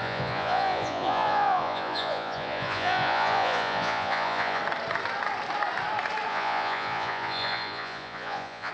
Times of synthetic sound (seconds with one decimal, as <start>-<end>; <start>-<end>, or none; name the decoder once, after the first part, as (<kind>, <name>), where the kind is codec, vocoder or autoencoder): 0.0-4.6 (vocoder, Vocos); 6.3-8.7